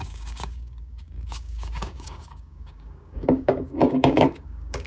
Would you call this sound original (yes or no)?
no